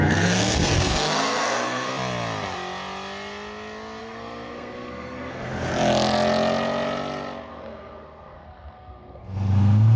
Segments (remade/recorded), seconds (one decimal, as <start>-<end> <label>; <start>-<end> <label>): 0.0-1.9 remade; 1.9-4.0 recorded; 4.0-5.7 remade; 5.7-7.5 recorded; 7.5-10.0 remade